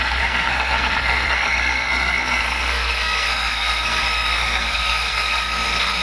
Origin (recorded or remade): remade